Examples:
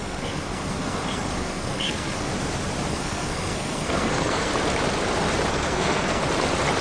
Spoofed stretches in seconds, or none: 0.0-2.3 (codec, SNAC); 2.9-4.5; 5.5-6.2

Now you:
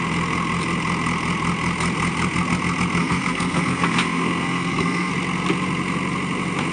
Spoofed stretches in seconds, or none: 3.0-5.1 (codec, SNAC)

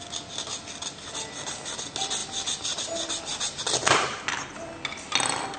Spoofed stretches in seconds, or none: none

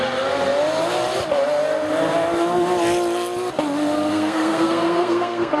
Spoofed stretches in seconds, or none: 4.1-5.6 (codec, SNAC)

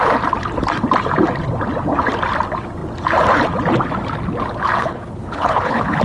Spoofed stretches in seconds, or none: 4.8-6.0 (codec, HILCodec)

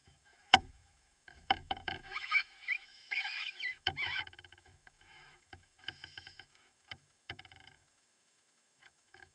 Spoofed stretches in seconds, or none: 0.0-9.3 (autoencoder, DAC-VAE)